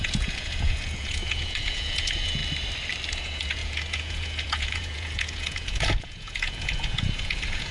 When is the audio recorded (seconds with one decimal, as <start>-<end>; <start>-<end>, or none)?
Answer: 2.4-3.1